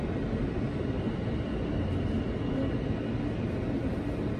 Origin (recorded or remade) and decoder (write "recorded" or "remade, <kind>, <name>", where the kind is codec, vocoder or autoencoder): recorded